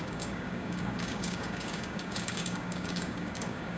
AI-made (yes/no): yes